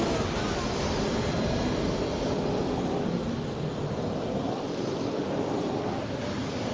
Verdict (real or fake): real